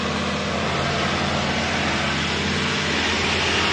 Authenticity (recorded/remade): recorded